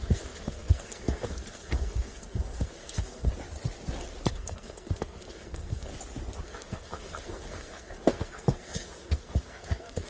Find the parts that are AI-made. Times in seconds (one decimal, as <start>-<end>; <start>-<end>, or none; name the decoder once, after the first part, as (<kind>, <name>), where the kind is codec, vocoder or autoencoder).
0.0-3.3 (codec, SNAC); 4.3-5.9; 6.4-10.1